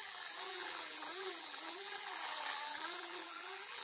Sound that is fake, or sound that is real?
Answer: fake